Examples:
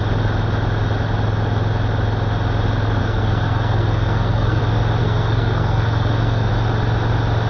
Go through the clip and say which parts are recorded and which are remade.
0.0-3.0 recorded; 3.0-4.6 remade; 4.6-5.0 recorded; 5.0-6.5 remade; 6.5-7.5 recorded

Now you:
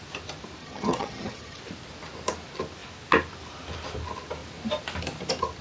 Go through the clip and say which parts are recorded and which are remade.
0.0-0.6 recorded; 0.6-1.6 remade; 1.6-5.6 recorded

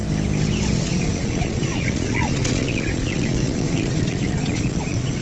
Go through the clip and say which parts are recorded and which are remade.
0.0-0.7 recorded; 0.7-5.2 remade

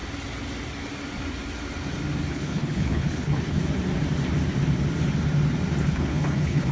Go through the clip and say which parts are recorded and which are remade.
0.0-2.3 recorded; 2.3-3.6 remade; 3.6-5.8 recorded; 5.8-6.7 remade

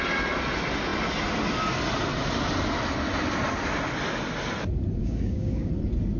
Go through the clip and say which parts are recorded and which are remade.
0.0-5.0 recorded; 5.0-5.7 remade; 5.7-6.2 recorded

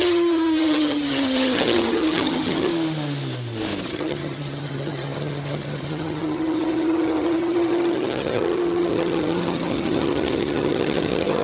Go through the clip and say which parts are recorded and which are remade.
0.0-2.7 remade; 2.7-3.8 recorded; 3.8-11.4 remade

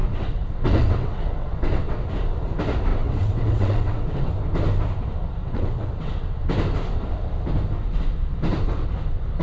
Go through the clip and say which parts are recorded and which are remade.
0.0-2.1 remade; 2.1-2.9 recorded; 2.9-4.3 remade; 4.3-5.4 recorded; 5.4-6.1 remade; 6.1-9.4 recorded

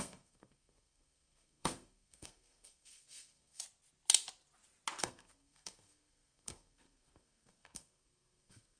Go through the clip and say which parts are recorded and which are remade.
0.0-3.6 remade; 3.6-5.0 recorded; 5.0-8.8 remade